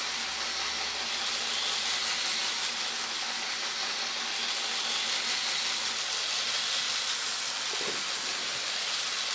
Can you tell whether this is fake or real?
real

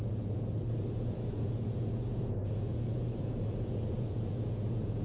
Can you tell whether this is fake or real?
fake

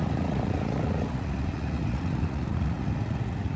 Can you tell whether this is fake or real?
fake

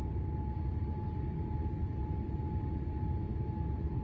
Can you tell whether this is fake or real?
real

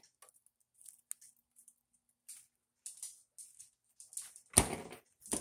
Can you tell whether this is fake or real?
real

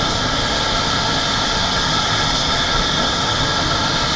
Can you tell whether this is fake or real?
real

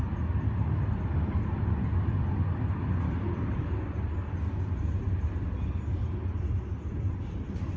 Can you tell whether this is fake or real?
real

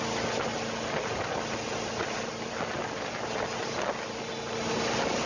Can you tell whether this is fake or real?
real